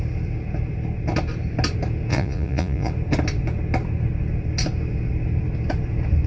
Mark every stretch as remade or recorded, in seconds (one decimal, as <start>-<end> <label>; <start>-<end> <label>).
0.0-2.1 recorded; 2.1-2.9 remade; 2.9-6.3 recorded